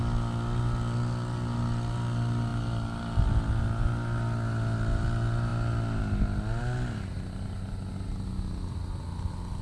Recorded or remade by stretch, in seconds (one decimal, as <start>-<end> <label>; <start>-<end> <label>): 0.0-9.6 recorded